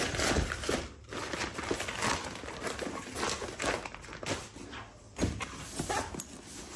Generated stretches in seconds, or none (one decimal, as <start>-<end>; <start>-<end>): none